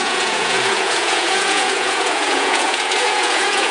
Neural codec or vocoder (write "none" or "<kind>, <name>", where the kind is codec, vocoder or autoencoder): vocoder, Vocos